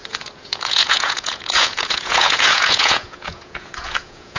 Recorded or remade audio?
remade